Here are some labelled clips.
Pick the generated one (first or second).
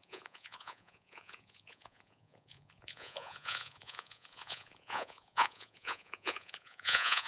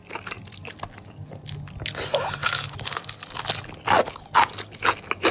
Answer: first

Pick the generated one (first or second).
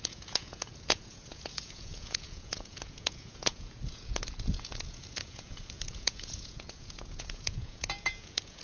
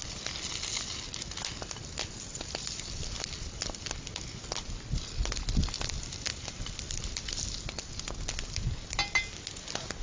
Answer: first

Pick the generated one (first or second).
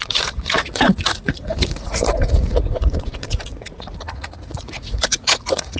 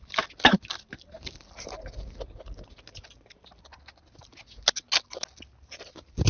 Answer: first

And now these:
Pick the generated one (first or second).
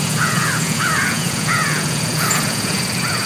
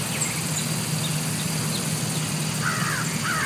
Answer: first